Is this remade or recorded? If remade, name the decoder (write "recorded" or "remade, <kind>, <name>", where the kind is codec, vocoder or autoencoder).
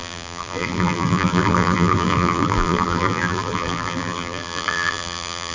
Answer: remade, vocoder, BigVGAN v2